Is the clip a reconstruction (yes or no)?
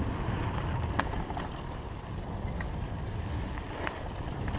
no